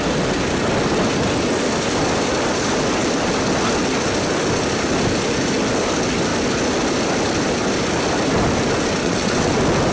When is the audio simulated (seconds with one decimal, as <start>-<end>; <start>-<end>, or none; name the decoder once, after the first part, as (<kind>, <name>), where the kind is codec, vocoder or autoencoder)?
9.0-9.5 (vocoder, WaveNeXt)